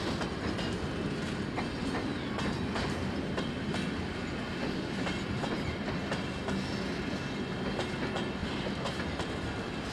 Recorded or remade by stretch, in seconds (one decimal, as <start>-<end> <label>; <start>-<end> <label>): 0.0-9.9 recorded